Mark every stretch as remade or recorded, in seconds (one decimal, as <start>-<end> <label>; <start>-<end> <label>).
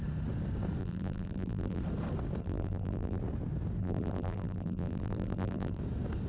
0.0-0.8 recorded; 0.8-1.8 remade; 1.8-2.4 recorded; 2.4-3.2 remade; 3.2-3.8 recorded; 3.8-5.8 remade; 5.8-6.3 recorded